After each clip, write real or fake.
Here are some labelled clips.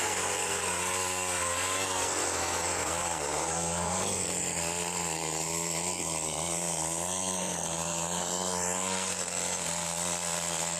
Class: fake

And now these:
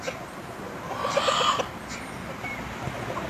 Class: real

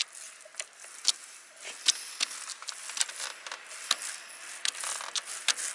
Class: real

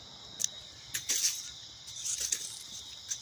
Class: real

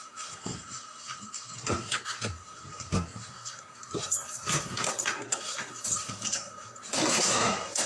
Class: fake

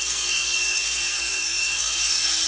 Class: fake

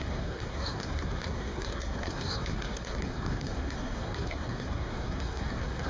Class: fake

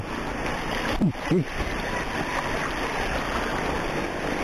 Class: real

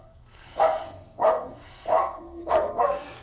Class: fake